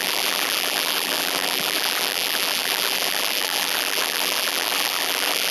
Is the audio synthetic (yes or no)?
yes